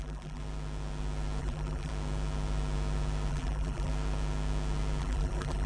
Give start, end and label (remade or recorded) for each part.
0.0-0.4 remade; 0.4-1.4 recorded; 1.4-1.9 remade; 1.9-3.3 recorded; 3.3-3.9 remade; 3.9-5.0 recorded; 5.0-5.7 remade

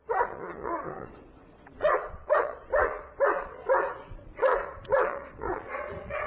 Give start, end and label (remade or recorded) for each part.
0.0-6.3 remade

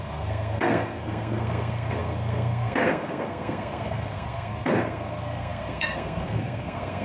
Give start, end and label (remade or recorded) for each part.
0.0-7.0 remade

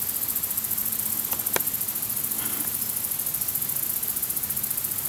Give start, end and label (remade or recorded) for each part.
0.0-5.1 recorded